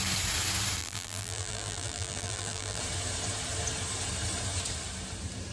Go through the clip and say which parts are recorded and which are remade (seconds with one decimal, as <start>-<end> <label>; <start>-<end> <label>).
0.0-0.8 recorded; 0.8-2.8 remade; 2.8-5.5 recorded